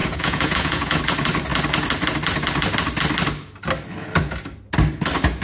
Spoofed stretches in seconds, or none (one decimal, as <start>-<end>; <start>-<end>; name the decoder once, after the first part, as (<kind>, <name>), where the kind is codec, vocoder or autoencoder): 0.0-1.0 (vocoder, Vocos)